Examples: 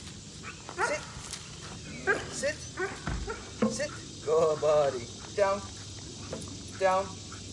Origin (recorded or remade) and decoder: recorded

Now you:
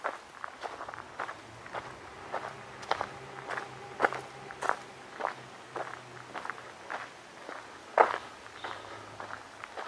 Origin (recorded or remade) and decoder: recorded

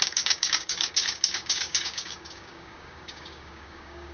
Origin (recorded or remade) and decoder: remade, codec, DAC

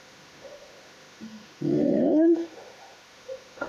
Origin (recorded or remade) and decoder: remade, autoencoder, DAC-VAE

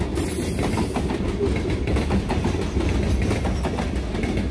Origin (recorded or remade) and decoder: recorded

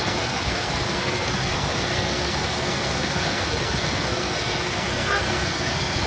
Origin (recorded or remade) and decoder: remade, codec, SNAC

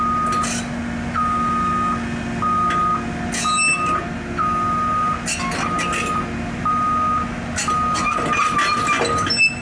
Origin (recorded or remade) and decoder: recorded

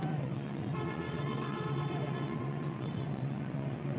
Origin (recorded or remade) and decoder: remade, vocoder, WaveNeXt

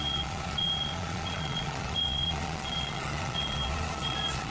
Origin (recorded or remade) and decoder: remade, vocoder, Vocos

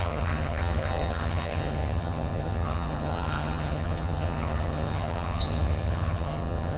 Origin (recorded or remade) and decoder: remade, vocoder, HiFi-GAN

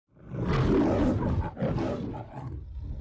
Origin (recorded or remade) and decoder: recorded